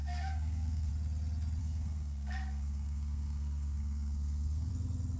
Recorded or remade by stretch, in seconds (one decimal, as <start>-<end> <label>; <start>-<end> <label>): 0.0-0.9 remade; 0.9-1.6 recorded; 1.6-4.7 remade; 4.7-5.2 recorded